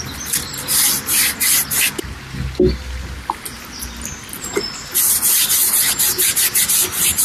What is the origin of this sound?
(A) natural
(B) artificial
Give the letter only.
A